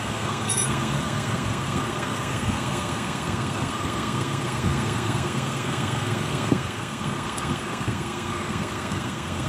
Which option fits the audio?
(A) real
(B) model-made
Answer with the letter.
B